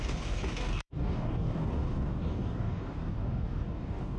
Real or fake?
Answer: fake